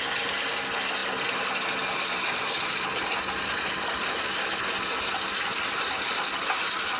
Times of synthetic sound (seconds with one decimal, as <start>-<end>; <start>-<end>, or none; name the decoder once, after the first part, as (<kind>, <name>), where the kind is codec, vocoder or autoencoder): none